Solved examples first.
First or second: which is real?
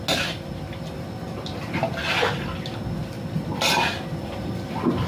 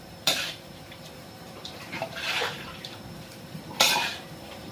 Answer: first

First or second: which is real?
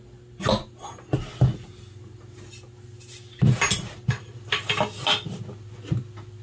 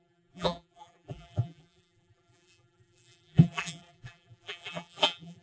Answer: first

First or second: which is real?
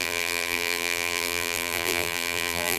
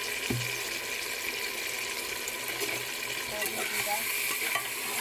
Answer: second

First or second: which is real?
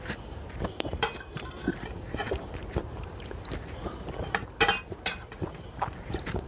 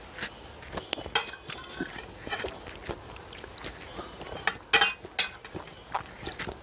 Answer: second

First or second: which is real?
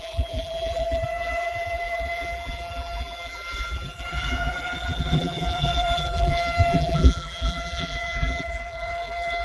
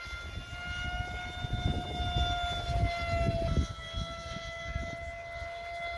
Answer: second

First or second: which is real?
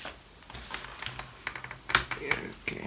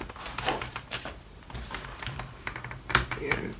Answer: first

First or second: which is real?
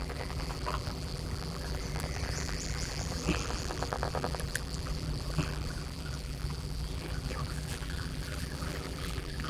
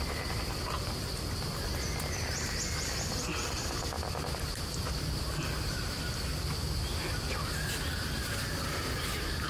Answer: second